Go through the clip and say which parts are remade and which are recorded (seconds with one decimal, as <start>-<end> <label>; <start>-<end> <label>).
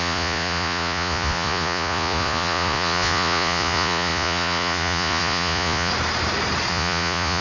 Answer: 0.0-5.9 remade; 5.9-6.7 recorded; 6.7-7.4 remade